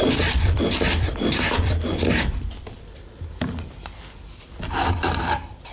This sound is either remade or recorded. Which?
remade